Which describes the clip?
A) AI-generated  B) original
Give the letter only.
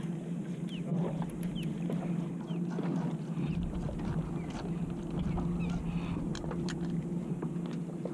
B